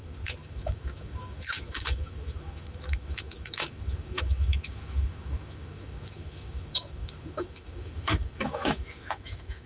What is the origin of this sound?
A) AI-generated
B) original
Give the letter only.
A